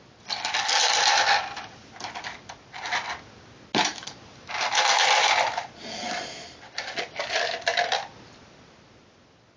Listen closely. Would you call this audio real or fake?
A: real